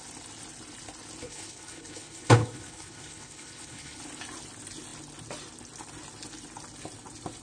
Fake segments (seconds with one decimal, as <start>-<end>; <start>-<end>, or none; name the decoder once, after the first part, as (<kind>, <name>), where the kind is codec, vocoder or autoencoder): 1.2-4.0 (codec, HILCodec)